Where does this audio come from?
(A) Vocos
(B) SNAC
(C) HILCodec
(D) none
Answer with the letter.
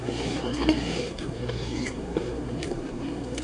B